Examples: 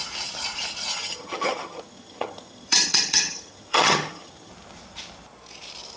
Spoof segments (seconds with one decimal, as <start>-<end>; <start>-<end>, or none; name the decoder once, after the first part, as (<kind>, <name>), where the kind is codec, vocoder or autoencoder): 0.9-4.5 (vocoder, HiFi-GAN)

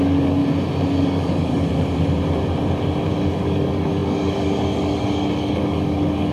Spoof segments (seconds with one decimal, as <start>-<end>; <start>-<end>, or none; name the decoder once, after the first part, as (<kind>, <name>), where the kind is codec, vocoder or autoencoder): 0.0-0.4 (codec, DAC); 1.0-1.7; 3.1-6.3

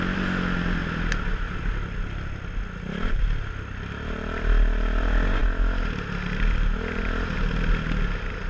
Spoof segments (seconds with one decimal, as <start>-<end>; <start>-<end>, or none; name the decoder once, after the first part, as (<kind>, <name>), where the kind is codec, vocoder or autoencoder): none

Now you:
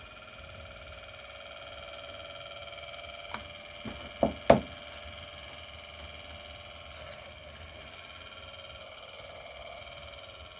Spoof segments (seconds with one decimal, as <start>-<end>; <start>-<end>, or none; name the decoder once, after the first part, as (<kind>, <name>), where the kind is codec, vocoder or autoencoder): 8.8-9.8 (codec, HILCodec)

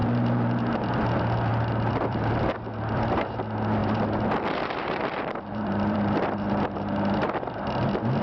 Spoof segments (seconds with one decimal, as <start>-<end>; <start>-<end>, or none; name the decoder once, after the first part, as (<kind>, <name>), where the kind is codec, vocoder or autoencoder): 0.0-0.7 (vocoder, BigVGAN v2); 1.5-3.4; 3.8-7.6